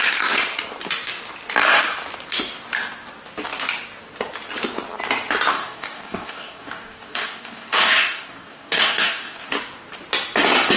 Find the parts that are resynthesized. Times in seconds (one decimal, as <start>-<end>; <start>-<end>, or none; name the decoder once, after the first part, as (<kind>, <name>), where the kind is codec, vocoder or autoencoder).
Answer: 5.5-9.5 (codec, DAC)